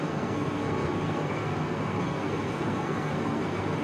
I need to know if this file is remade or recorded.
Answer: remade